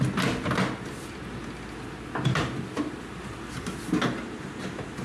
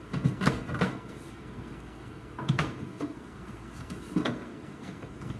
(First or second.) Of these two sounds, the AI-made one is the second